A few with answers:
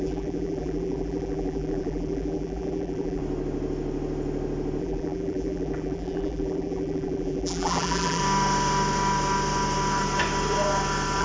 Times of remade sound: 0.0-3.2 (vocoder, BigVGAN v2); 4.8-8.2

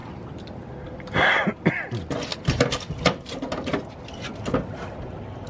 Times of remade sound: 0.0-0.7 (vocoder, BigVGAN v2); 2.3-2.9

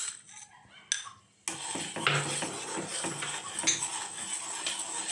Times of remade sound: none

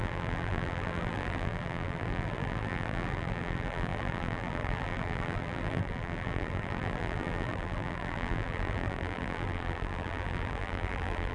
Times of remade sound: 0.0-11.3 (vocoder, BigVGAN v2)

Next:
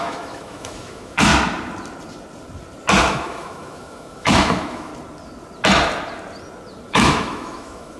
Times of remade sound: 0.0-1.3 (autoencoder, DAC-VAE); 3.0-4.9; 6.9-8.0

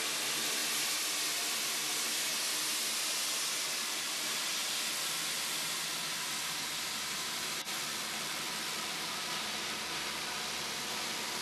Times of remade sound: none

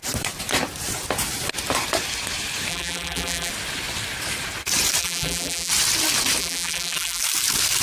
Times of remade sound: 2.7-3.5 (vocoder, BigVGAN v2); 5.0-5.7; 6.4-7.2